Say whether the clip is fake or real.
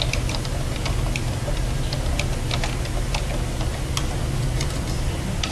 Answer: real